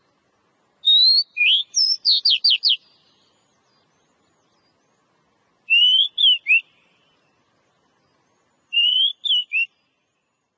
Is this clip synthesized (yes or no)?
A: no